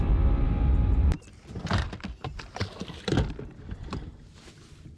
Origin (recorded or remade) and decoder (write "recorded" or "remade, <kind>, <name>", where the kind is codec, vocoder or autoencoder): recorded